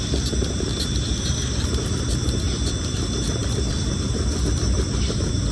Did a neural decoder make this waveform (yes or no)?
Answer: yes